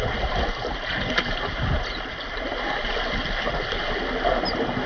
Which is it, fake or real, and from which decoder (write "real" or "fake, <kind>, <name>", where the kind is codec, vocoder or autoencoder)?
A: real